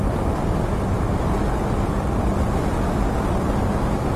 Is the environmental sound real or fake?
real